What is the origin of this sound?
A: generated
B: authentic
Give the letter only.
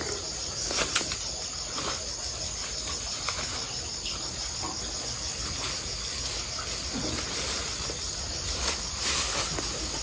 B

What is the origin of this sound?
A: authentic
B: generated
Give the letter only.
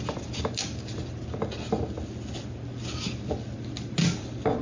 A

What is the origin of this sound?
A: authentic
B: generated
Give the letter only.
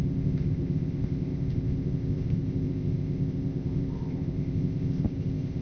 B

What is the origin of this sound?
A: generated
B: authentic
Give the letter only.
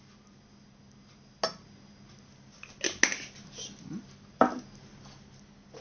B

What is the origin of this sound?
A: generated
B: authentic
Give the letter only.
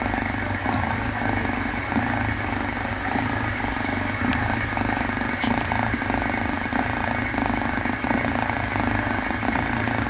B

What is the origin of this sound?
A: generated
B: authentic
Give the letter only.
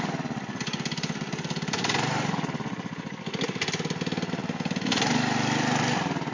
B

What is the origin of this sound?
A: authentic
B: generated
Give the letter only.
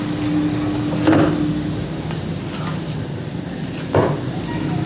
A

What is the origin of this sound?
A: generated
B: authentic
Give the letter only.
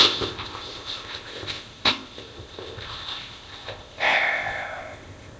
A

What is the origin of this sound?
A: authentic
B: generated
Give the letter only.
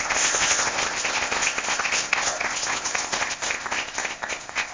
B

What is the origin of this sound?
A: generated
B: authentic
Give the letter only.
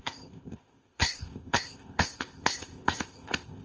A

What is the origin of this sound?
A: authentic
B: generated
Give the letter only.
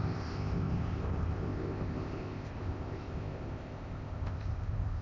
B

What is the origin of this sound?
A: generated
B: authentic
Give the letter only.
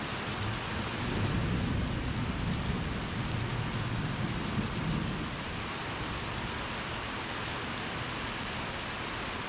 B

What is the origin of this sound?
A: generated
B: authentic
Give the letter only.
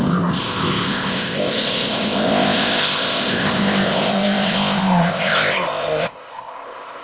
A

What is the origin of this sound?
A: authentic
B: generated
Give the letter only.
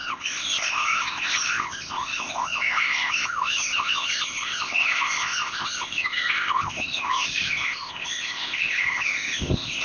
B